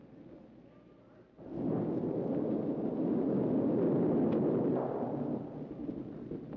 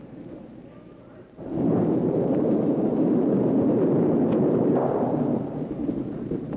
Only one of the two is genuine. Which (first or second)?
first